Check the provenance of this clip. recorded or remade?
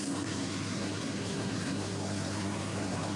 remade